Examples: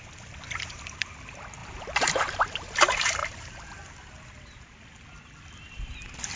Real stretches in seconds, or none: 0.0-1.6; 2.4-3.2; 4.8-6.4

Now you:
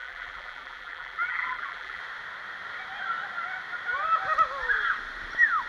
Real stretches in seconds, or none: 2.0-5.7

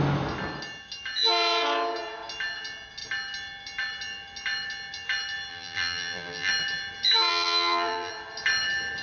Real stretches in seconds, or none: 0.0-5.5; 6.5-7.3; 8.1-9.0

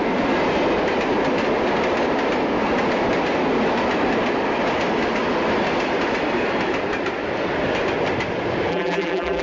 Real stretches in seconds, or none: 0.0-8.7

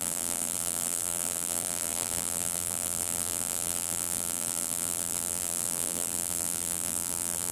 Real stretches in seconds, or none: none

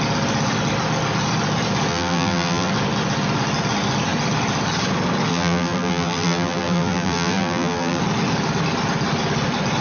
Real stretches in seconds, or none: 0.0-1.9; 2.7-5.3; 8.0-9.8

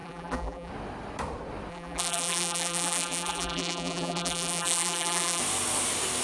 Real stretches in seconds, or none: 0.7-1.7; 5.4-6.2

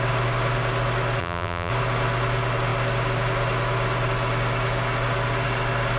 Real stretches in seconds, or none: 0.0-1.2; 1.7-6.0